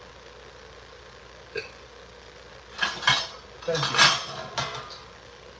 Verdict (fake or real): real